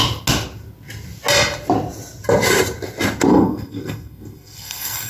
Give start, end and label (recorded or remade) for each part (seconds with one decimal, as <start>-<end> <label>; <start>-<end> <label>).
0.0-3.3 recorded; 3.3-5.1 remade